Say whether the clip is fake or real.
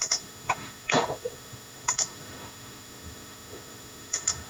fake